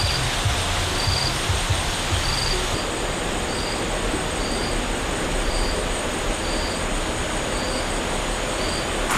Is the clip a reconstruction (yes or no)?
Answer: no